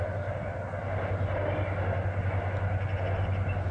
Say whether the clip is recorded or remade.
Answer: recorded